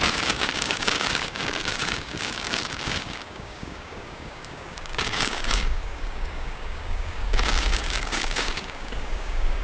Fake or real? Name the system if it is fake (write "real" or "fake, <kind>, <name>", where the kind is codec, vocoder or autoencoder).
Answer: fake, codec, DAC